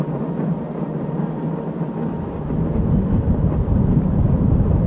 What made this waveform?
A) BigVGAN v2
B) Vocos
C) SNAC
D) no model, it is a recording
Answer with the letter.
D